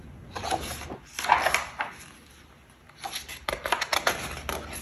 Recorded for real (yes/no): yes